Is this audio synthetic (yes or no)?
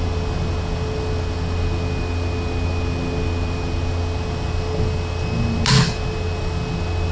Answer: no